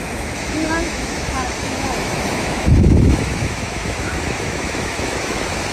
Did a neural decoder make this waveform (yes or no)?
yes